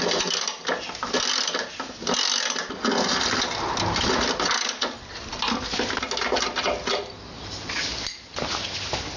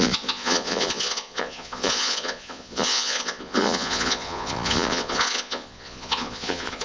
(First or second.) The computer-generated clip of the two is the second